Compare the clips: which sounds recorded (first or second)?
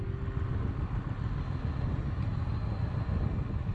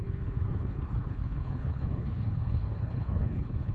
first